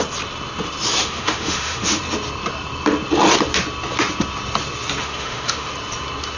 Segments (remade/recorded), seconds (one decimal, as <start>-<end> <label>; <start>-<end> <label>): 0.0-1.0 recorded; 1.0-2.0 remade; 2.0-5.0 recorded; 5.0-5.7 remade; 5.7-6.4 recorded